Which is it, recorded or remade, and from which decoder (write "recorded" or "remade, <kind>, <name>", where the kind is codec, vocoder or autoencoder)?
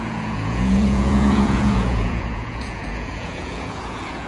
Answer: remade, vocoder, Vocos